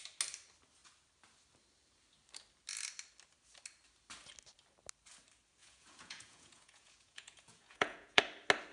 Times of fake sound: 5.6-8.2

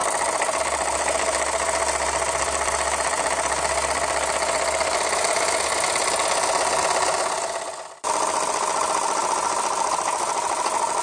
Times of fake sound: none